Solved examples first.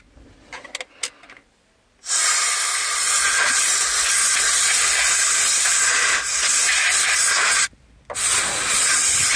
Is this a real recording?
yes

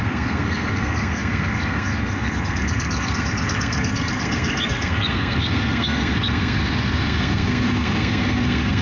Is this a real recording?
no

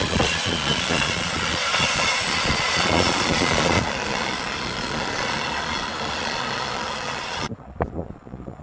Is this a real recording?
no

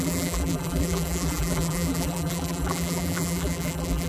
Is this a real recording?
no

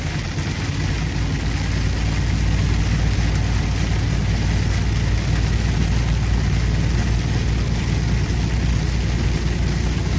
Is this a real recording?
yes